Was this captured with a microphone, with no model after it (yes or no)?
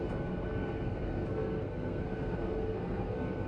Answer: no